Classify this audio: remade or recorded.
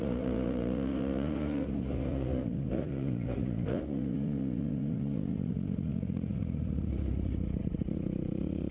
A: remade